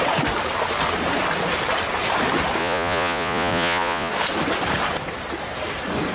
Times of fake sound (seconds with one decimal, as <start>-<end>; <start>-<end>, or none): 2.6-4.1